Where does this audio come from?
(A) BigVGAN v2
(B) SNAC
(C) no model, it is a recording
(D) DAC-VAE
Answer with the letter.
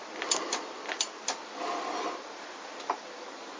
C